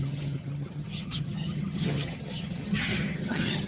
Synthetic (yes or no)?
yes